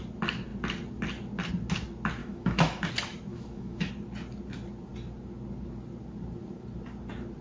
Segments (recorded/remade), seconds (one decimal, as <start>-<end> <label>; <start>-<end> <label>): 0.0-2.2 recorded; 2.2-2.9 remade; 2.9-3.3 recorded; 3.3-3.9 remade; 3.9-7.4 recorded